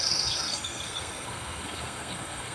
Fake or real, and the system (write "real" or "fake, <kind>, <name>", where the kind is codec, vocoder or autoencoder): fake, codec, SNAC